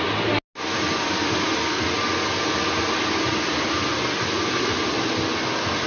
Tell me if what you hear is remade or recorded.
recorded